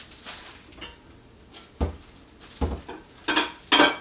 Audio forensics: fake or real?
real